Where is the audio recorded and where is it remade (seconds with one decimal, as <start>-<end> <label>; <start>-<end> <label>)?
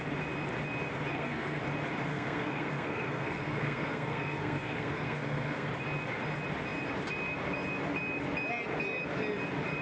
0.0-1.1 recorded; 1.1-1.6 remade; 1.6-2.1 recorded; 2.1-5.7 remade; 5.7-9.8 recorded